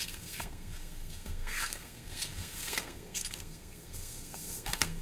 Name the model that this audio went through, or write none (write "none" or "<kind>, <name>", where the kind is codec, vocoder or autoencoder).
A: codec, SNAC